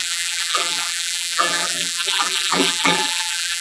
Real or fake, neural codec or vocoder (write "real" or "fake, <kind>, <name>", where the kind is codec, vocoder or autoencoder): fake, vocoder, BigVGAN v2